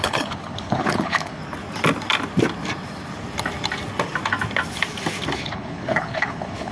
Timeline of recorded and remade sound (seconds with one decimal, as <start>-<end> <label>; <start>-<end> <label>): 0.0-1.4 remade; 1.4-5.4 recorded; 5.4-6.7 remade